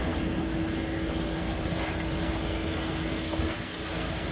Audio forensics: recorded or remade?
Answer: remade